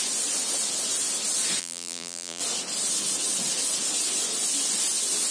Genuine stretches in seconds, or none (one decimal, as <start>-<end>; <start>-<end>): 0.0-1.6; 2.4-5.3

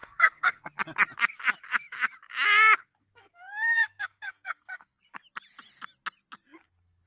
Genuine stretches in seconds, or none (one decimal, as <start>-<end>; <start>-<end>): 0.7-2.8; 5.0-7.1

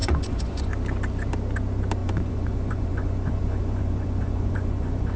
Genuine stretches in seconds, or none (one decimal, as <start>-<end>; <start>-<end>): 0.7-2.0